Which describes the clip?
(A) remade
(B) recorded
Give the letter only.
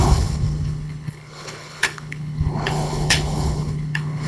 A